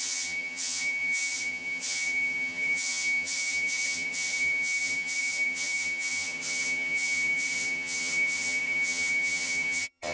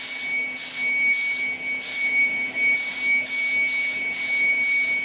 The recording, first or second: second